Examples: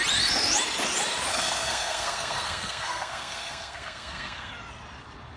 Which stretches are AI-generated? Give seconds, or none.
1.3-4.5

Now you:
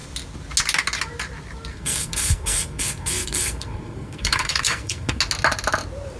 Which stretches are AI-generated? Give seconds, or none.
1.7-5.2